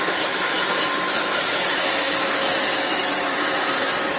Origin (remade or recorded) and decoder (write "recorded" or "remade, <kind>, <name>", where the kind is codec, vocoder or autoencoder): remade, autoencoder, DAC-VAE